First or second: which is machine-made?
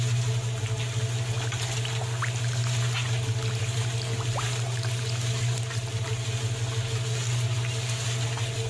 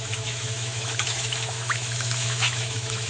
second